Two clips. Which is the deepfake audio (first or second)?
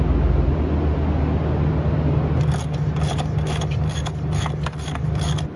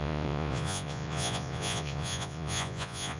second